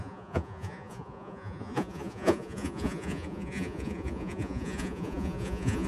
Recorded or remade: remade